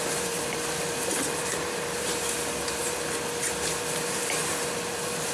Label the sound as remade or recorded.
remade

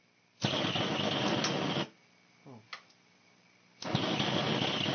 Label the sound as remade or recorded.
recorded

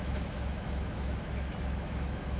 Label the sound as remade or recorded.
remade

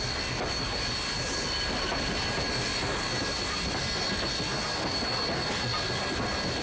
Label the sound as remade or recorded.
recorded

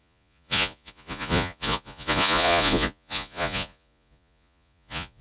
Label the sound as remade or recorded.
remade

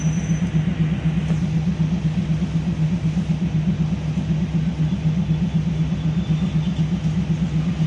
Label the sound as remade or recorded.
recorded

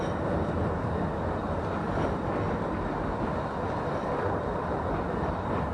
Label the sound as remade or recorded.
recorded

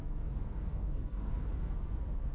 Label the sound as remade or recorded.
remade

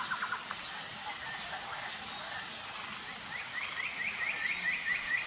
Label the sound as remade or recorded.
recorded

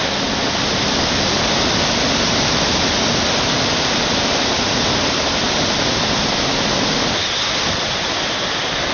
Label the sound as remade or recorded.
recorded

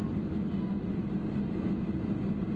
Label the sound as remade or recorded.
recorded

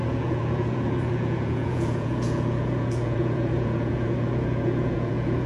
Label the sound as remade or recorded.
remade